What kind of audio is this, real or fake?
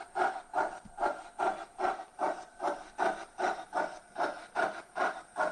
real